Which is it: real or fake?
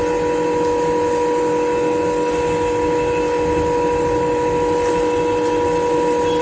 real